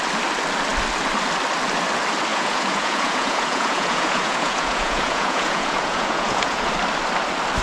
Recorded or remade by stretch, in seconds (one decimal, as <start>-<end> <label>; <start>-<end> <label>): 0.0-2.3 recorded; 2.3-6.7 remade; 6.7-7.6 recorded